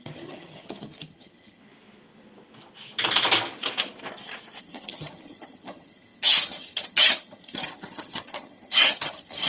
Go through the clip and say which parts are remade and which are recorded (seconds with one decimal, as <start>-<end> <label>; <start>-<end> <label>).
0.0-1.6 remade; 1.6-4.6 recorded; 4.6-9.5 remade